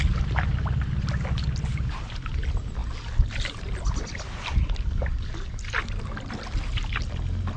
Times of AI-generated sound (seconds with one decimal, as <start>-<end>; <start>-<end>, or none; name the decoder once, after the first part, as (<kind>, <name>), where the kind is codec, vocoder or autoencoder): none